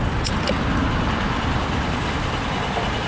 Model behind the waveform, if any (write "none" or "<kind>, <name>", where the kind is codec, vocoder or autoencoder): none